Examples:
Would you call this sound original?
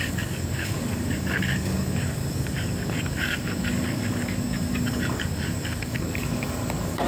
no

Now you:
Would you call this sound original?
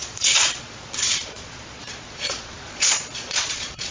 no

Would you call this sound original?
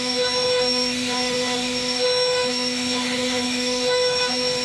no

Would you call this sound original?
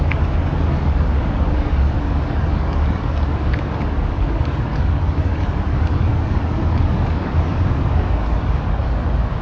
no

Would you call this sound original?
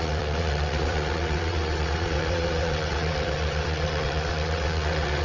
no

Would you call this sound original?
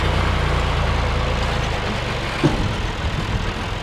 yes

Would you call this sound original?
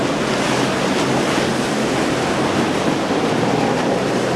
yes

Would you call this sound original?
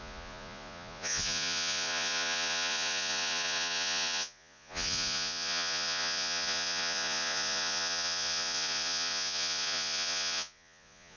no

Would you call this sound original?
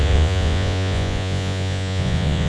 no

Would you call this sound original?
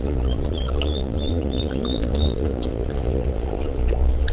no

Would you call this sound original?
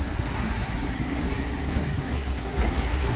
no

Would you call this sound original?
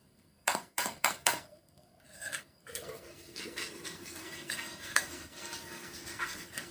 no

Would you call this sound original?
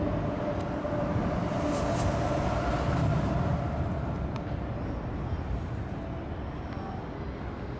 yes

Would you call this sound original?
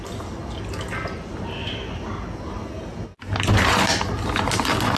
yes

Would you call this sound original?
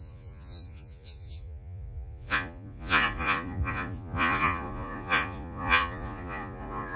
no